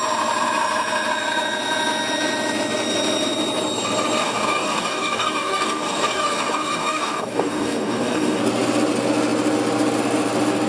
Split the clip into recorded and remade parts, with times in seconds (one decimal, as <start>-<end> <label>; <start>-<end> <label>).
0.0-4.2 recorded; 4.2-8.4 remade; 8.4-10.7 recorded